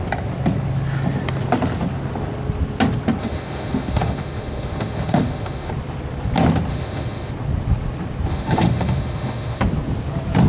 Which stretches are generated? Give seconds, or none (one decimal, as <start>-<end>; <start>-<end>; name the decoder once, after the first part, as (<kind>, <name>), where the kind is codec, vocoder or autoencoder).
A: 3.2-5.7 (autoencoder, DAC-VAE); 6.7-7.3; 8.3-9.6